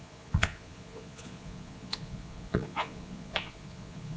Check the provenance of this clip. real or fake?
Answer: fake